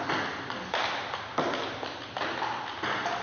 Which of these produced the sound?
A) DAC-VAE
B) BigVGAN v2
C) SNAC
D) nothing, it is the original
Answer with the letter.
D